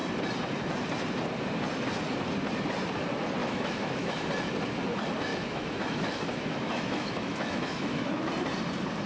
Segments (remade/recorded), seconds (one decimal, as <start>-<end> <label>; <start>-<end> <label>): 0.0-3.4 recorded; 3.4-4.3 remade; 4.3-5.3 recorded; 5.3-8.3 remade; 8.3-9.1 recorded